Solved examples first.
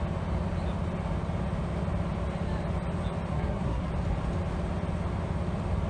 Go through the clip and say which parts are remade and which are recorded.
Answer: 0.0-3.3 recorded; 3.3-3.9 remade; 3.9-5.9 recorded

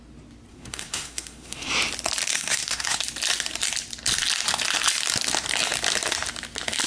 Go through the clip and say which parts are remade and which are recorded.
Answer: 0.0-0.5 recorded; 0.5-1.7 remade; 1.7-2.3 recorded; 2.3-3.0 remade; 3.0-6.9 recorded

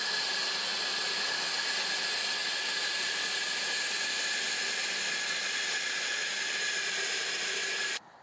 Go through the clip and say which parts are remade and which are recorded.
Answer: 0.0-8.2 recorded

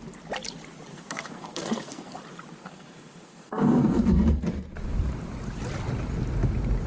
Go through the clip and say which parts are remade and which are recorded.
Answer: 0.0-0.9 recorded; 0.9-2.2 remade; 2.2-2.6 recorded; 2.6-4.4 remade; 4.4-6.9 recorded

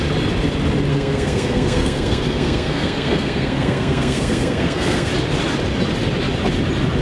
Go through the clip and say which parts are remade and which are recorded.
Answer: 0.0-0.9 recorded; 0.9-5.1 remade; 5.1-7.0 recorded